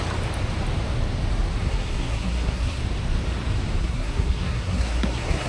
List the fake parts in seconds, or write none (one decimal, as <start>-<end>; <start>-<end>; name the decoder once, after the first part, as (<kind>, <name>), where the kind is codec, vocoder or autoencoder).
1.6-2.8 (codec, SNAC); 3.8-5.5